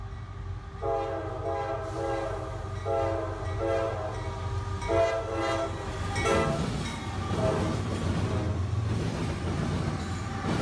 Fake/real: real